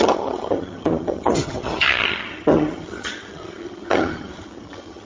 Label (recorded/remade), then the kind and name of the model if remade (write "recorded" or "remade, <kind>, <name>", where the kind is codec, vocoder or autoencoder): remade, vocoder, HiFi-GAN